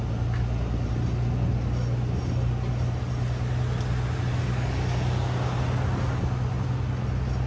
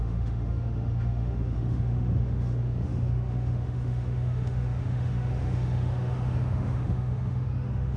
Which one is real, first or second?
first